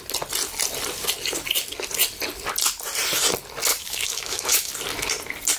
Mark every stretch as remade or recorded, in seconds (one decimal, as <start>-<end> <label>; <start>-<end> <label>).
0.0-3.7 recorded; 3.7-4.8 remade; 4.8-5.6 recorded